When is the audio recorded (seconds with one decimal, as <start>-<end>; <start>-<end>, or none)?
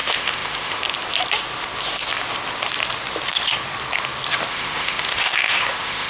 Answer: 0.8-4.5